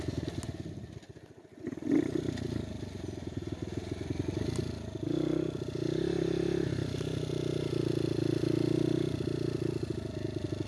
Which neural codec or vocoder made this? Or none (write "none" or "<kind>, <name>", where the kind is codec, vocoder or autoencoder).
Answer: none